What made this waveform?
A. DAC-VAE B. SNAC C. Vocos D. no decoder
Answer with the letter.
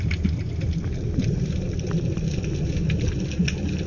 D